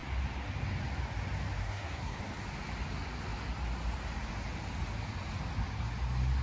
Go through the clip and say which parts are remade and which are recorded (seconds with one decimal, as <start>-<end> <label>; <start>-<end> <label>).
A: 0.0-1.6 recorded; 1.6-2.2 remade; 2.2-6.4 recorded